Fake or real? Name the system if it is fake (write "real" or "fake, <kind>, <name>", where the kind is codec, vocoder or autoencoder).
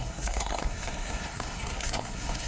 fake, codec, SNAC